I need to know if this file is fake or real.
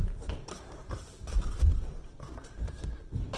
real